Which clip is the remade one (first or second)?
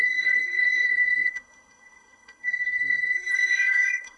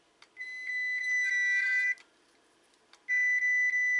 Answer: first